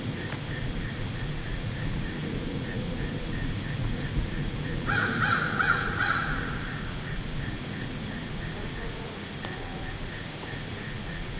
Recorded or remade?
remade